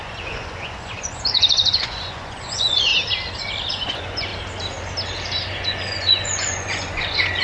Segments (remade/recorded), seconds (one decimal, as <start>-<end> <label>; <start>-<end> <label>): 0.0-2.9 remade; 2.9-3.7 recorded; 3.7-4.3 remade; 4.3-5.5 recorded; 5.5-7.4 remade